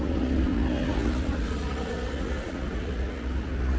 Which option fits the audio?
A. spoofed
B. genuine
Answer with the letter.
A